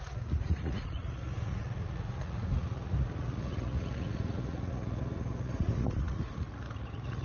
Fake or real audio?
fake